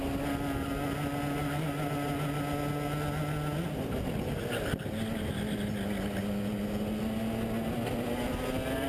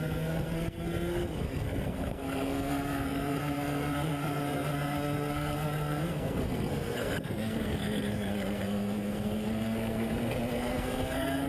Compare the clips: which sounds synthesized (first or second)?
second